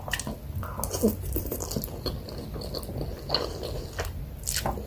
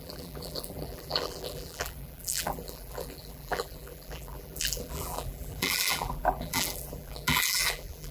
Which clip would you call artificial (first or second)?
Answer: second